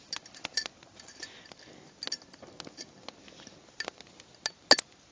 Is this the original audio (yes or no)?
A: yes